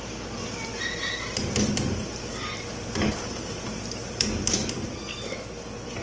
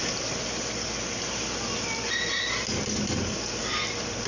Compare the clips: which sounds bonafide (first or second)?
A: second